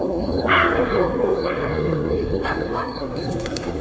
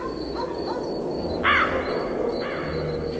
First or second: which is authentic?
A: second